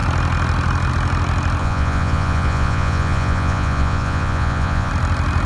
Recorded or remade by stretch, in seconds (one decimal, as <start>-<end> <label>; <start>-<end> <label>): 0.0-1.6 recorded; 1.6-4.9 remade; 4.9-5.5 recorded